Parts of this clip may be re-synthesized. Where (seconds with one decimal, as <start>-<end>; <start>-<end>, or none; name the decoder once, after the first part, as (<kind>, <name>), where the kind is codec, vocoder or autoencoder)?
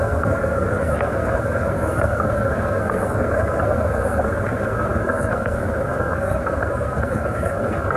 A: 0.0-8.0 (codec, SNAC)